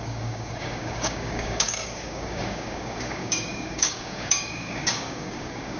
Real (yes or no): no